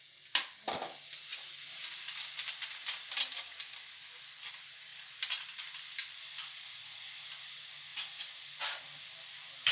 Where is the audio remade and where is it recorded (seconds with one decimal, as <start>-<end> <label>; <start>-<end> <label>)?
0.0-1.3 recorded; 1.3-3.2 remade; 3.2-4.9 recorded; 4.9-7.5 remade; 7.5-9.7 recorded